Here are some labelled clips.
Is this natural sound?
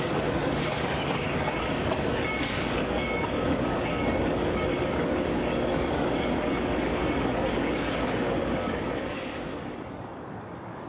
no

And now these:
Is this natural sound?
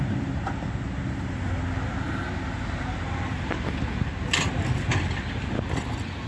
yes